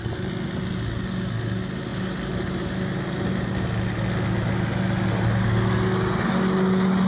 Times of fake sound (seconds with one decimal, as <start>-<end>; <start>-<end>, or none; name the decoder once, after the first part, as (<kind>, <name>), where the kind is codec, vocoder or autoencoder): none